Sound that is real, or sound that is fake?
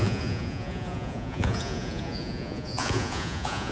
fake